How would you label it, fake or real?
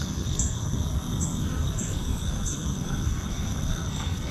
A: fake